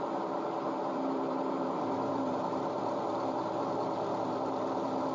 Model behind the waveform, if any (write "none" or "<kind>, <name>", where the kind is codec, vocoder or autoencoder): vocoder, BigVGAN v2